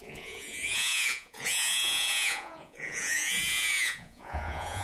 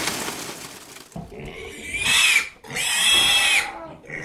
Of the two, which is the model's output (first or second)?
first